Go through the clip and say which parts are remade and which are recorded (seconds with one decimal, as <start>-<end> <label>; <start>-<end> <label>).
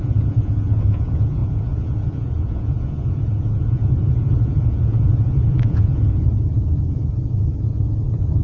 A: 0.0-8.4 remade